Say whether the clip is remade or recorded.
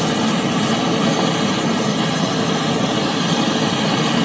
recorded